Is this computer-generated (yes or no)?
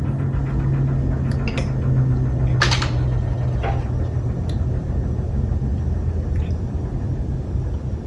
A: no